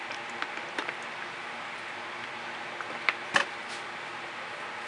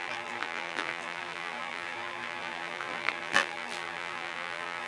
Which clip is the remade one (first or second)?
second